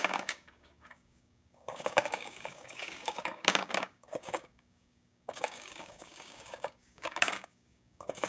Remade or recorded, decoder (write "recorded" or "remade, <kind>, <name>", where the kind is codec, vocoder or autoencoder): remade, codec, DAC